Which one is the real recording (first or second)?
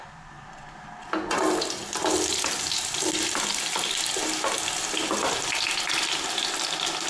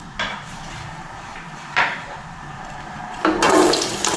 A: first